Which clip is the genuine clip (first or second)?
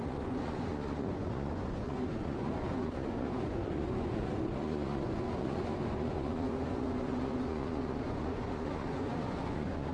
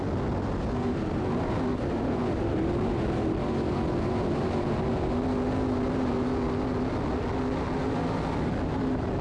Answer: second